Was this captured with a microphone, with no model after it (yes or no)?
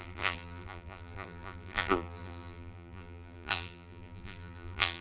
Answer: no